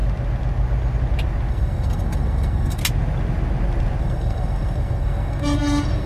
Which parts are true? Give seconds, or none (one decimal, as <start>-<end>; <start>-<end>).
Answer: 0.0-1.5; 2.8-4.0